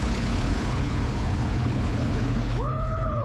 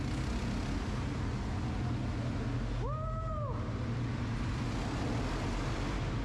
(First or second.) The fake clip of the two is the first